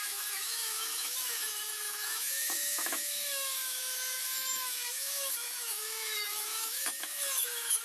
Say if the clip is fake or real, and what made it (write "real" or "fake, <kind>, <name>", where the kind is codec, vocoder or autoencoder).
fake, autoencoder, DAC-VAE